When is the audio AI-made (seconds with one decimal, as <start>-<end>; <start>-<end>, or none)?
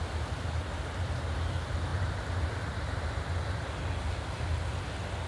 none